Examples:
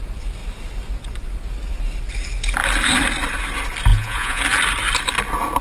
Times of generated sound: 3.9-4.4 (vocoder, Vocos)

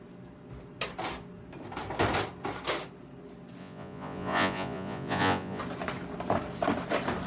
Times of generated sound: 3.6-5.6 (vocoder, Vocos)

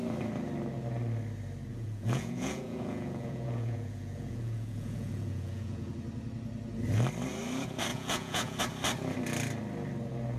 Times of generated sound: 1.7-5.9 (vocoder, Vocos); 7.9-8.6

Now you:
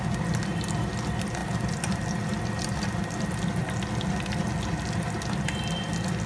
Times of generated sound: none

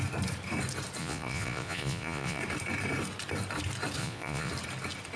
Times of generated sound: 1.0-2.4 (vocoder, Vocos); 4.0-4.5

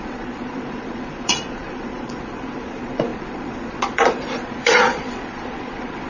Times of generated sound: 0.0-6.1 (vocoder, Vocos)

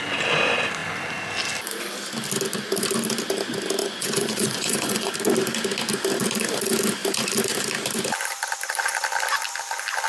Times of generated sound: 3.8-5.1 (vocoder, Vocos)